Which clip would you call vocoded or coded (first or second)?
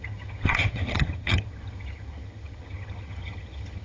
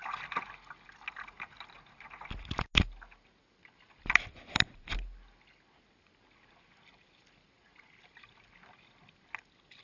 first